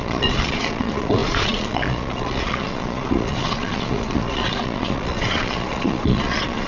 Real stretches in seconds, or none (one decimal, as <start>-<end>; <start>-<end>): none